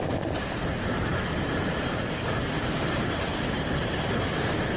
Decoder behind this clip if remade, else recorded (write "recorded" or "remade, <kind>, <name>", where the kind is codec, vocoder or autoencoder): remade, vocoder, BigVGAN v2